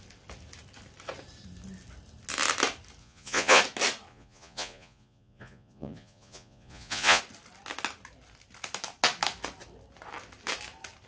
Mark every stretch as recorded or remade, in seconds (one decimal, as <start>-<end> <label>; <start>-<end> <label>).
0.0-3.0 recorded; 3.0-3.6 remade; 3.6-4.1 recorded; 4.1-7.2 remade; 7.2-11.1 recorded